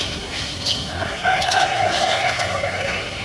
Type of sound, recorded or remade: remade